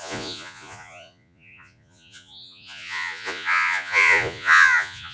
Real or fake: fake